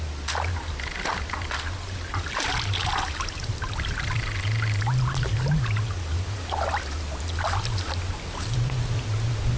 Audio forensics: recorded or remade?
recorded